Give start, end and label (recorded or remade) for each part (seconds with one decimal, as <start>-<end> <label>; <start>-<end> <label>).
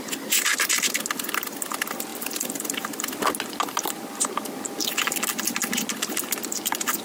0.0-2.1 recorded; 2.1-3.3 remade; 3.3-7.0 recorded